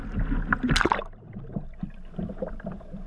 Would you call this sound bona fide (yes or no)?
yes